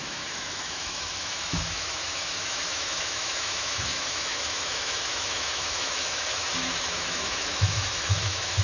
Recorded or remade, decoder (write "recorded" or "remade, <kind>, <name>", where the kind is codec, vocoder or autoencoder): remade, autoencoder, DAC-VAE